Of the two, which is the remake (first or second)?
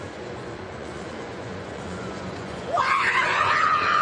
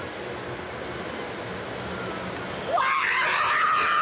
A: first